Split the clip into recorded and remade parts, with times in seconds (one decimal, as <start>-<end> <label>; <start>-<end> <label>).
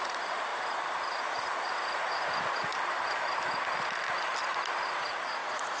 0.0-0.5 remade; 0.5-1.2 recorded; 1.2-2.7 remade; 2.7-5.0 recorded; 5.0-5.8 remade